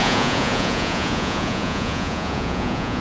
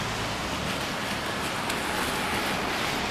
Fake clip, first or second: first